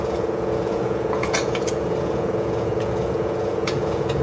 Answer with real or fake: fake